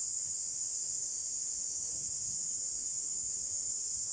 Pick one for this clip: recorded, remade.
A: remade